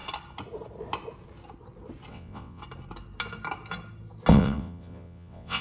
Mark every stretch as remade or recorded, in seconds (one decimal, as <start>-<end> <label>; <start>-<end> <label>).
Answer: 0.0-2.1 recorded; 2.1-2.6 remade; 2.6-4.3 recorded; 4.3-5.6 remade